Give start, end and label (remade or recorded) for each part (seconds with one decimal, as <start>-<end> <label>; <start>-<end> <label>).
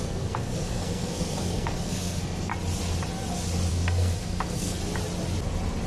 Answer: 0.0-2.5 remade; 2.5-3.7 recorded; 3.7-4.8 remade; 4.8-5.9 recorded